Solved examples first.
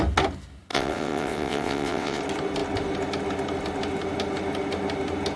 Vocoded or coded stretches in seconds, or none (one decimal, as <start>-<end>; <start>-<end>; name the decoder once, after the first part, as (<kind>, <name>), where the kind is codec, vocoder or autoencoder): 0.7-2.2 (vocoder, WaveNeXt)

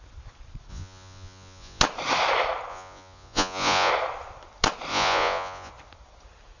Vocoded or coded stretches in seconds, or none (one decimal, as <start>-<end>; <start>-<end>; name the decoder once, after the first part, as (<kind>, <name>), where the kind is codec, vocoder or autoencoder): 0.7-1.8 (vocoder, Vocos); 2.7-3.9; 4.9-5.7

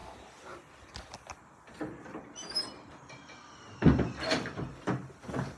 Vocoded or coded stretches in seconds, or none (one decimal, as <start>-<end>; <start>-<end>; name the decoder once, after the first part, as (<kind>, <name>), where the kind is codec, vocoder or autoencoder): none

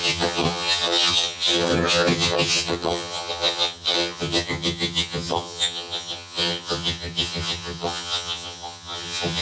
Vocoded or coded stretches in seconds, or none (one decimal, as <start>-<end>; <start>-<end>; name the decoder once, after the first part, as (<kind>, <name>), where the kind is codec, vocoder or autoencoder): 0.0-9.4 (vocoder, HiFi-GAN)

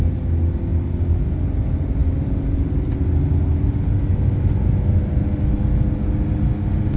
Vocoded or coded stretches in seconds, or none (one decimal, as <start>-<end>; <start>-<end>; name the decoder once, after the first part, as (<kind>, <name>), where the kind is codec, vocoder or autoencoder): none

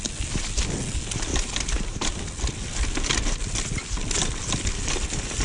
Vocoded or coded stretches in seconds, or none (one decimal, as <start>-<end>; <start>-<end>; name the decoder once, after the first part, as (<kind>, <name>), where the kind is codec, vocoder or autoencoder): 1.3-2.2 (vocoder, BigVGAN v2)

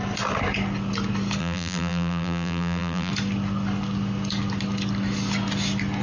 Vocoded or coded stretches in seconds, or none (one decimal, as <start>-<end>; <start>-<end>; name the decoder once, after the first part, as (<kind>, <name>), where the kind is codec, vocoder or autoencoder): 1.4-3.1 (vocoder, BigVGAN v2)

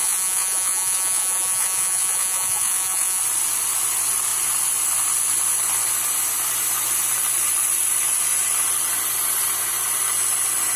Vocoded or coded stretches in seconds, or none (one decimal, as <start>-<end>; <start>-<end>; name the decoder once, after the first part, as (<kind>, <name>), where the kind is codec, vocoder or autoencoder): 0.0-3.2 (vocoder, Vocos)